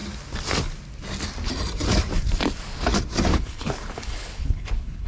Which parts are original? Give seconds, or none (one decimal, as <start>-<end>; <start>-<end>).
0.0-3.3